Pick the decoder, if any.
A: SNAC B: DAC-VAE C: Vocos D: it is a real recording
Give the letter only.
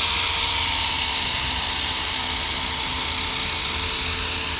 D